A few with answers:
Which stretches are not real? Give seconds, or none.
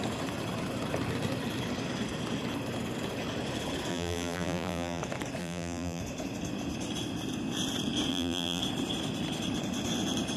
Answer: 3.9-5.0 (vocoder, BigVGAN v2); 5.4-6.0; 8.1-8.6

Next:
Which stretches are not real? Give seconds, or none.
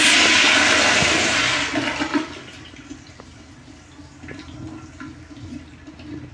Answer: none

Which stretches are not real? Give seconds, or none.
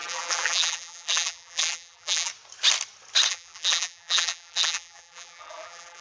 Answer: 0.0-2.3 (vocoder, BigVGAN v2); 3.3-6.0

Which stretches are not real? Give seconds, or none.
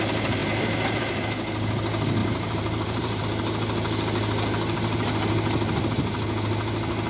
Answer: 2.2-3.2 (vocoder, BigVGAN v2)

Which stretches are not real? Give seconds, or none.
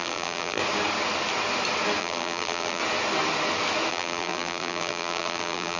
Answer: 0.0-0.6 (vocoder, BigVGAN v2); 2.0-2.8; 3.9-5.8